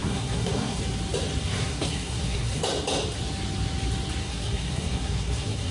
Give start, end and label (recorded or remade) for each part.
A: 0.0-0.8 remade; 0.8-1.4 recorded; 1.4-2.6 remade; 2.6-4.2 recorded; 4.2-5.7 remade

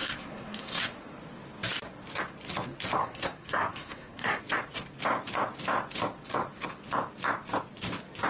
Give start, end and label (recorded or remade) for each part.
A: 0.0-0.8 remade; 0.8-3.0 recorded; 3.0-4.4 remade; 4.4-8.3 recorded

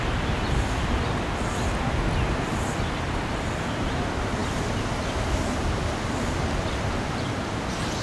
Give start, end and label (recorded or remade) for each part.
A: 0.0-8.0 recorded